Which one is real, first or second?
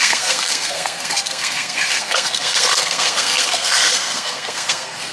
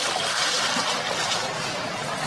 second